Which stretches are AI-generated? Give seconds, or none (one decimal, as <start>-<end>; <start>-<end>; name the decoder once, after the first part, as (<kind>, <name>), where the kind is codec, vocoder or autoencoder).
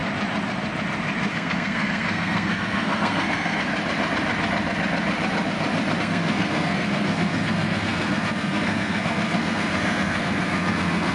1.3-3.7 (codec, SNAC); 6.0-11.1